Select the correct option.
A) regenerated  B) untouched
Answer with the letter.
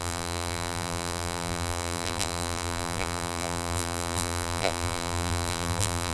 A